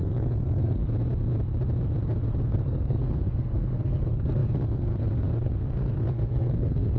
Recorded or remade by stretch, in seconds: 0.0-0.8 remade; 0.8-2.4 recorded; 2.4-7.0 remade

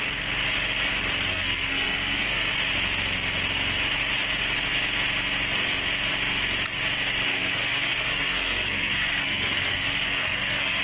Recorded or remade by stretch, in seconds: 0.0-1.3 recorded; 1.3-2.5 remade; 2.5-7.3 recorded; 7.3-10.8 remade

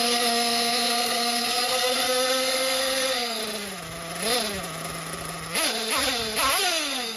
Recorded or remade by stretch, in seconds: 0.0-3.4 remade; 3.4-6.6 recorded; 6.6-7.2 remade

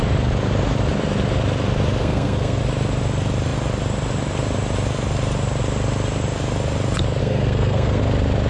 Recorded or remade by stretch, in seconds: 0.0-2.0 recorded; 2.0-2.6 remade; 2.6-7.2 recorded; 7.2-8.0 remade; 8.0-8.5 recorded

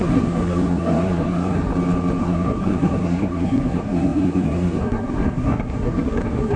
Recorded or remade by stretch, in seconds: 0.0-1.7 remade; 1.7-2.2 recorded; 2.2-6.6 remade